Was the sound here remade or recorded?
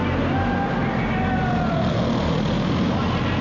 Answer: recorded